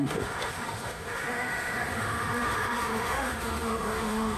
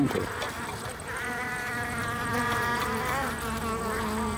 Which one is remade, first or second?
first